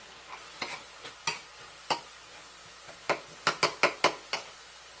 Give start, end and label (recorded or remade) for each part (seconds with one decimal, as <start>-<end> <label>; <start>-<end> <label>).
0.0-5.0 recorded